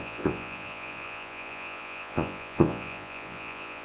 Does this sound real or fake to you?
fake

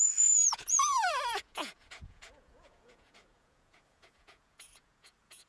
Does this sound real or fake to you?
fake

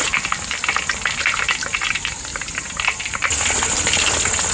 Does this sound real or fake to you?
real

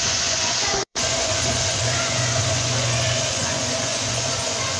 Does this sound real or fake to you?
fake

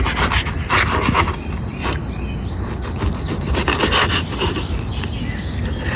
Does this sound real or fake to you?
real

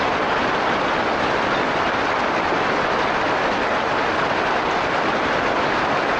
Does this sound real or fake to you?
real